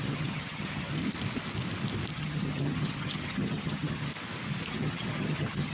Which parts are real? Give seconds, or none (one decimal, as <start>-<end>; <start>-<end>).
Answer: 1.0-2.1; 4.1-4.7